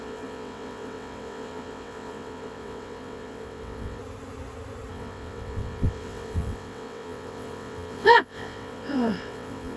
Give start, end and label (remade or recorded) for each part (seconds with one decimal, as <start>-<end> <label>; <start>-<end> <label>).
0.0-4.0 remade; 4.0-4.9 recorded; 4.9-9.8 remade